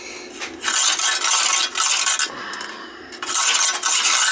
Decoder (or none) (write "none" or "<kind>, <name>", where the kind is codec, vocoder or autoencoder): none